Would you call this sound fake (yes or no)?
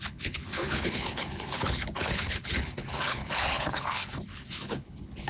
yes